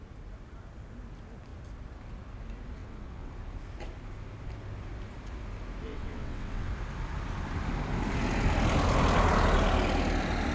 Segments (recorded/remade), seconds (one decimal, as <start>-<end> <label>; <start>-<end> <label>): 0.0-2.8 recorded; 2.8-3.3 remade; 3.3-5.9 recorded; 5.9-6.7 remade; 6.7-10.5 recorded